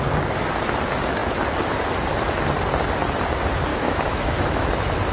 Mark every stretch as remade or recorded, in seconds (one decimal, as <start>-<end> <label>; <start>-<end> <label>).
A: 0.0-3.7 recorded; 3.7-4.6 remade; 4.6-5.1 recorded